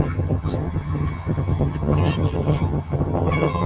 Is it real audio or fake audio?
fake